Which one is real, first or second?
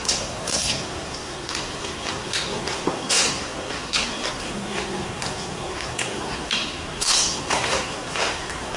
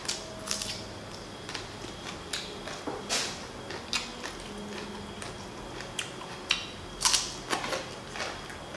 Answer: second